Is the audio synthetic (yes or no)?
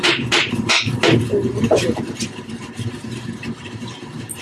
yes